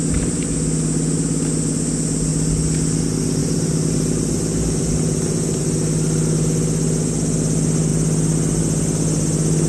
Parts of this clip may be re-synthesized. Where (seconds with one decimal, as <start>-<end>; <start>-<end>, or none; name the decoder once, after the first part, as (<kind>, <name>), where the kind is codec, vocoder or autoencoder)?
3.4-5.6 (vocoder, BigVGAN v2)